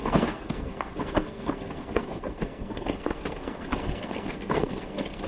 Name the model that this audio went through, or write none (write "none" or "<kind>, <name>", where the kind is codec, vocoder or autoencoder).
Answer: codec, SNAC